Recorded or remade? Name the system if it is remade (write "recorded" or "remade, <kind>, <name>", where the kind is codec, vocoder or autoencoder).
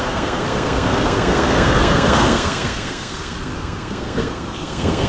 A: remade, codec, SNAC